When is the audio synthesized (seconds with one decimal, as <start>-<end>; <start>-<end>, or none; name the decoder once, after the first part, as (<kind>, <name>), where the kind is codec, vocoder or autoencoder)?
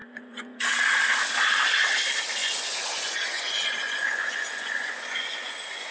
0.0-0.7 (vocoder, Vocos); 2.4-5.9